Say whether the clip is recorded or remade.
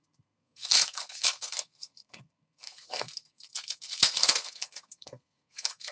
remade